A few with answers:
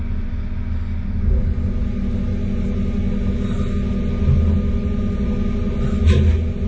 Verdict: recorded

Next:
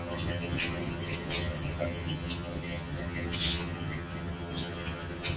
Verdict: remade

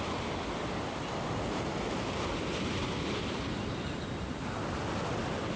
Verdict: recorded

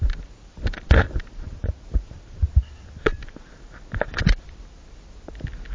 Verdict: recorded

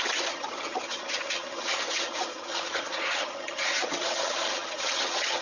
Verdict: remade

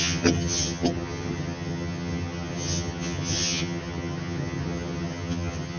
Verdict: remade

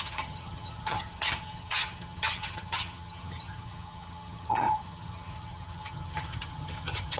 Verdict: remade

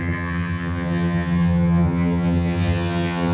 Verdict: remade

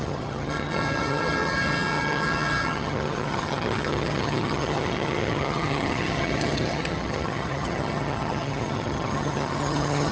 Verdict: remade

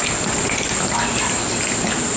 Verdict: recorded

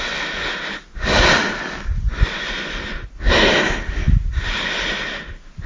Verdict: recorded